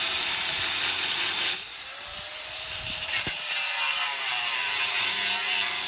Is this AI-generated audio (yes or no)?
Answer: yes